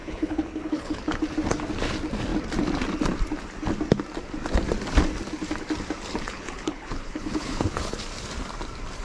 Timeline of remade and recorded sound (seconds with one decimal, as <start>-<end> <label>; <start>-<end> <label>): 0.0-1.2 remade; 1.2-6.1 recorded; 6.1-8.0 remade; 8.0-9.0 recorded